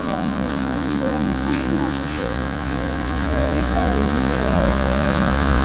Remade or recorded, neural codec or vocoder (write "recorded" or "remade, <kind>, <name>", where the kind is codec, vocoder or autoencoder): remade, vocoder, Vocos